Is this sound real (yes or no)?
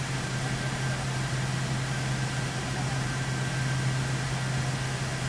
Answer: yes